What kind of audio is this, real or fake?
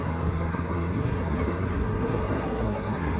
fake